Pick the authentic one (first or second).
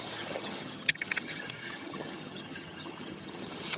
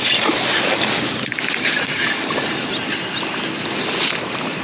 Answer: second